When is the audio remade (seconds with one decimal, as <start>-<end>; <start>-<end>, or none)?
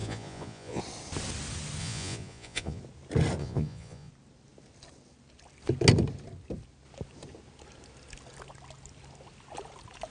0.0-0.8; 1.8-2.8; 3.4-4.1